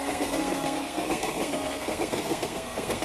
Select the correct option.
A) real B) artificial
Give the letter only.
B